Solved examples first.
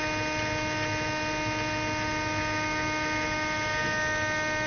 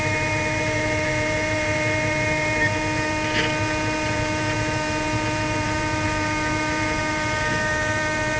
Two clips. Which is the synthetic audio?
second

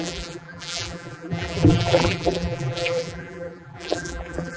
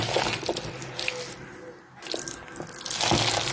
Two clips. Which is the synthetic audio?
first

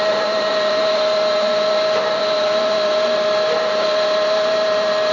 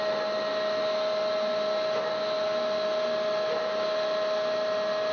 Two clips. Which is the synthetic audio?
first